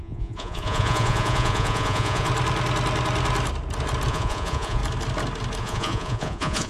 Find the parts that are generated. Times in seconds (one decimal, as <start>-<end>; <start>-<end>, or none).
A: 0.0-2.3; 4.1-4.8; 5.6-6.7